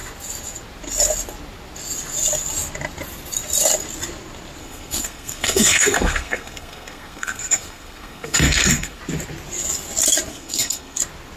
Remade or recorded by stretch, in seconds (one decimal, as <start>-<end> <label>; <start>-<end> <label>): 0.0-4.6 recorded; 4.6-9.0 remade; 9.0-10.3 recorded; 10.3-11.0 remade; 11.0-11.4 recorded

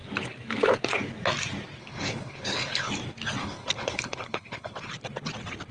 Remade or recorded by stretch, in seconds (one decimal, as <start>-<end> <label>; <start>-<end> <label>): 0.0-1.8 recorded; 1.8-2.9 remade; 2.9-3.4 recorded; 3.4-4.9 remade; 4.9-5.7 recorded

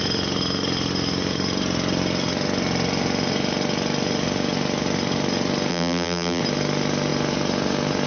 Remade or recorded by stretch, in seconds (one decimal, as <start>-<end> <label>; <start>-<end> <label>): 0.0-5.7 recorded; 5.7-6.4 remade; 6.4-8.1 recorded

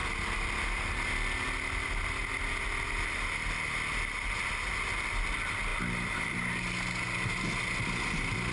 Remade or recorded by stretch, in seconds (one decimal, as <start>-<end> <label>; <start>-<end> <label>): 0.0-8.5 recorded

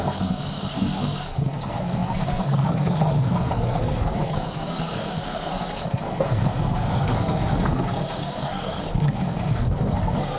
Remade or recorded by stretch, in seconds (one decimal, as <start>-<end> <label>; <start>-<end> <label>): 0.0-10.4 remade

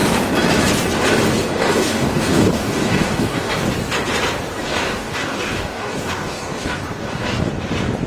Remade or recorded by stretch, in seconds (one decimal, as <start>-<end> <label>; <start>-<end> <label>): 0.0-1.6 recorded; 1.6-3.6 remade; 3.6-4.6 recorded; 4.6-7.5 remade; 7.5-8.1 recorded

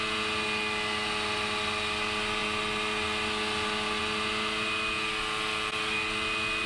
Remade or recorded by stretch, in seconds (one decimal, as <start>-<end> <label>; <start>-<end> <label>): 0.0-6.7 recorded